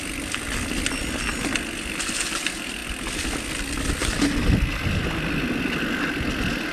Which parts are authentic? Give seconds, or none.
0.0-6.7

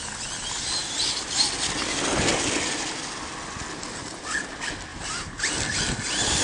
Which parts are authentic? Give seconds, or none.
0.0-4.9; 5.5-6.4

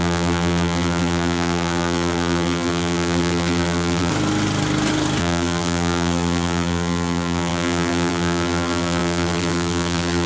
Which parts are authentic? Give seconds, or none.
4.1-5.2